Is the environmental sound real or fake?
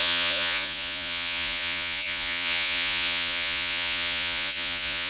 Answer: fake